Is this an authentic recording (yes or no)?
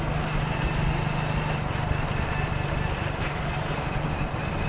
yes